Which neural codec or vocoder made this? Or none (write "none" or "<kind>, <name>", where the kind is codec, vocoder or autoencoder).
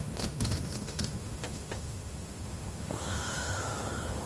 autoencoder, DAC-VAE